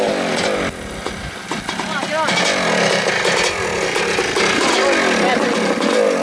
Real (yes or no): yes